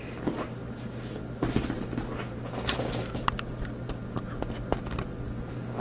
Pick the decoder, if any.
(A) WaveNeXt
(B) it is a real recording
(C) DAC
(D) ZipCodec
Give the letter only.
B